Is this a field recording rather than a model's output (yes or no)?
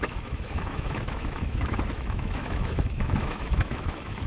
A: no